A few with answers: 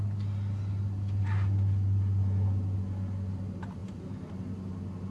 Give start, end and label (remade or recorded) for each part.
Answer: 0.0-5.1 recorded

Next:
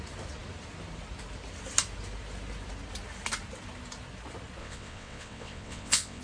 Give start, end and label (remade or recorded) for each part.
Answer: 0.0-4.6 recorded; 4.6-6.2 remade